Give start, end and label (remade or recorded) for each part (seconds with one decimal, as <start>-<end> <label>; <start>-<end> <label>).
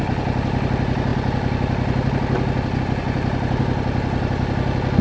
0.0-5.0 recorded